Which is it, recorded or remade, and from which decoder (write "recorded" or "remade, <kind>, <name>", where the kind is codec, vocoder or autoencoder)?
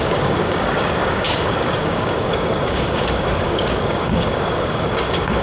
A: remade, codec, DAC